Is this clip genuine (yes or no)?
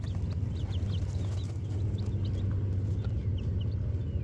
yes